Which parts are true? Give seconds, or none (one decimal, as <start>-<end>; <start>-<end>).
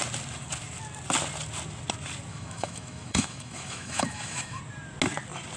0.0-2.3; 4.6-5.6